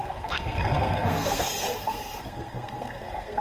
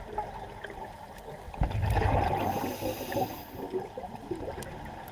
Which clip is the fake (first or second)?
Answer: first